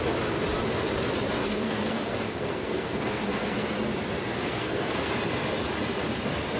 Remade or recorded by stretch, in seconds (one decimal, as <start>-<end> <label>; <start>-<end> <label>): 0.0-1.4 recorded; 1.4-3.8 remade; 3.8-4.3 recorded; 4.3-5.1 remade; 5.1-6.6 recorded